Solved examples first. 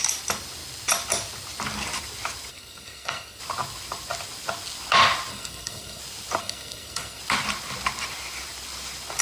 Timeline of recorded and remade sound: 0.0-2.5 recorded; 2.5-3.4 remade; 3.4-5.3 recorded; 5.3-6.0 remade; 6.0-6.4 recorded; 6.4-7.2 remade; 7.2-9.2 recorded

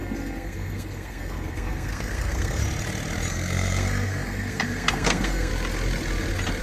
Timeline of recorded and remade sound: 0.0-2.6 remade; 2.6-3.3 recorded; 3.3-5.5 remade; 5.5-6.6 recorded

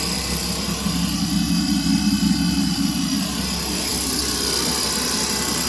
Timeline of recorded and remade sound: 0.0-5.7 recorded

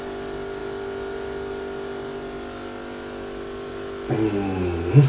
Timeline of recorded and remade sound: 0.0-5.1 recorded

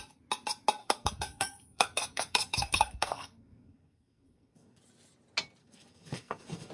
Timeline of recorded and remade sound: 0.0-0.8 recorded; 0.8-4.8 remade; 4.8-5.6 recorded; 5.6-6.7 remade